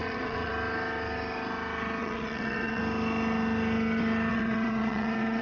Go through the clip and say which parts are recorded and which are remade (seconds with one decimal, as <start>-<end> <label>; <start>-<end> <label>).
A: 0.0-0.5 remade; 0.5-2.0 recorded; 2.0-2.8 remade; 2.8-4.3 recorded; 4.3-5.4 remade